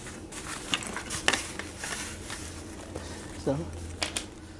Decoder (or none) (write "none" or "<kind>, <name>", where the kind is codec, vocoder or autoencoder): none